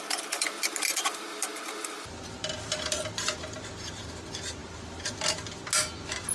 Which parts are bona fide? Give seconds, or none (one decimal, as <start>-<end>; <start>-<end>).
0.0-6.3